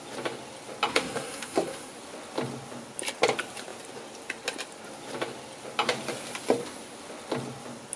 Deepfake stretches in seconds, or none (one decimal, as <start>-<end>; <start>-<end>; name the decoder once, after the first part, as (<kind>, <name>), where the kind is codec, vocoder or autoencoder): 0.9-1.9 (codec, SNAC)